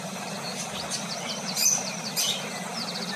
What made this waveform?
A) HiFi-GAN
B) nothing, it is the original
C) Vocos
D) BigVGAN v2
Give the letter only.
B